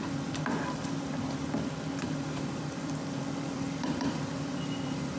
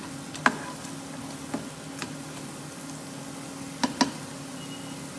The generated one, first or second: first